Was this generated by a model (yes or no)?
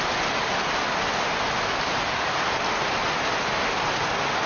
no